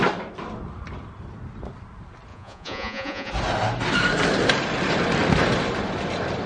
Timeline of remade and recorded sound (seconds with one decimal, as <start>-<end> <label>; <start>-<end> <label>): 0.0-2.3 recorded; 2.3-3.3 remade; 3.3-6.5 recorded